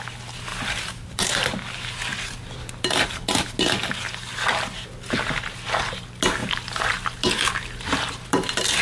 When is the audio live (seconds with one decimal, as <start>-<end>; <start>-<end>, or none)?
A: 0.0-0.5; 1.3-6.4; 6.9-8.8